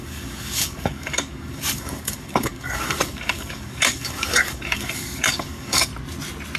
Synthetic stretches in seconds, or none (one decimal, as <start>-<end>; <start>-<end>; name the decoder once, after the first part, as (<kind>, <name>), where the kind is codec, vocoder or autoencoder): 0.0-5.9 (codec, DAC)